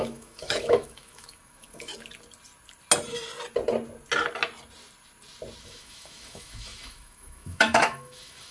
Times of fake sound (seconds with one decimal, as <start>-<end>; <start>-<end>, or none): 0.0-1.9; 5.6-8.5